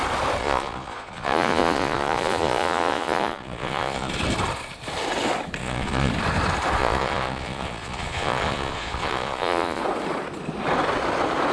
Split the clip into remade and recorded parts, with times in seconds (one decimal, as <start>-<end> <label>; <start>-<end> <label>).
0.0-0.4 recorded; 0.4-4.1 remade; 4.1-5.6 recorded; 5.6-6.1 remade; 6.1-6.8 recorded; 6.8-9.8 remade; 9.8-11.5 recorded

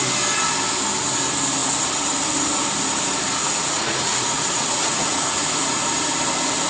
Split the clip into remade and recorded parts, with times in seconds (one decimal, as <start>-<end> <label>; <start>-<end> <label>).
0.0-3.4 recorded; 3.4-5.8 remade; 5.8-6.7 recorded

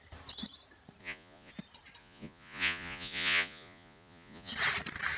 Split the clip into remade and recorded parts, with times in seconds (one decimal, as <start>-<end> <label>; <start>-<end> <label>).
0.0-1.0 recorded; 1.0-1.5 remade; 1.5-2.0 recorded; 2.0-4.5 remade; 4.5-5.2 recorded